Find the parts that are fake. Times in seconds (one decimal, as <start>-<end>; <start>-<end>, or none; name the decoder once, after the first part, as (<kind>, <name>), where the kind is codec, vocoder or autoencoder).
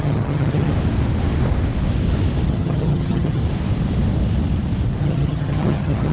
0.0-0.7 (vocoder, HiFi-GAN); 2.5-3.4; 5.0-6.1